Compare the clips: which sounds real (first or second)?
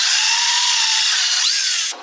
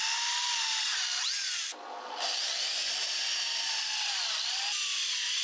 second